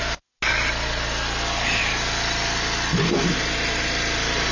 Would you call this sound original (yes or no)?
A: yes